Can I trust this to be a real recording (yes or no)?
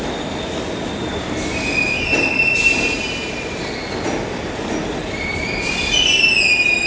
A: yes